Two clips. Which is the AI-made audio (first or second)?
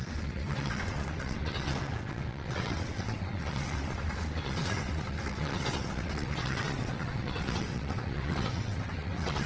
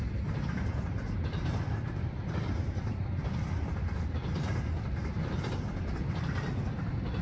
first